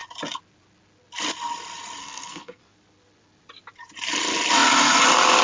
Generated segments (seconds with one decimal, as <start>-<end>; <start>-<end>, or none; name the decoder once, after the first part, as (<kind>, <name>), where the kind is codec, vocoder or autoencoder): 2.0-2.6 (codec, SNAC)